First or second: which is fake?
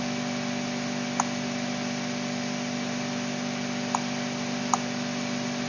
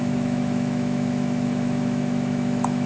second